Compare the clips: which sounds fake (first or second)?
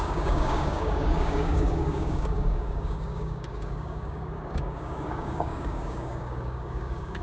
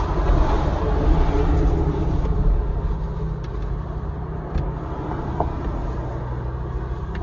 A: first